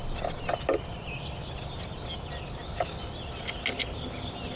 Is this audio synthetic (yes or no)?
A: no